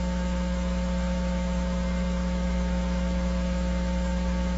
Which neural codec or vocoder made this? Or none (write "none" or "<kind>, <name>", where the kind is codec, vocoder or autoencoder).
autoencoder, DAC-VAE